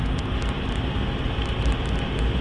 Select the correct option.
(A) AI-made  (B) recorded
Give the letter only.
B